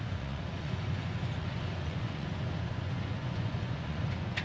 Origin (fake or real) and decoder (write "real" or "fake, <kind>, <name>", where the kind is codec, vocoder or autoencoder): fake, vocoder, Vocos